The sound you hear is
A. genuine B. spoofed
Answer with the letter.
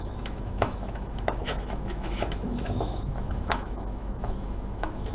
B